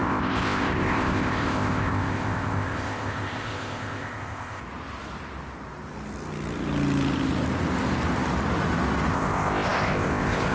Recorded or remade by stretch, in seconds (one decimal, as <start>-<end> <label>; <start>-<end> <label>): 0.0-4.6 remade; 4.6-9.1 recorded; 9.1-10.5 remade